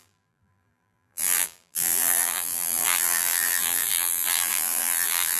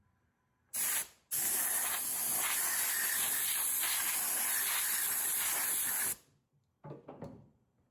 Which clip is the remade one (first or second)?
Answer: first